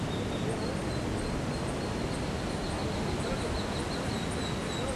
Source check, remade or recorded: recorded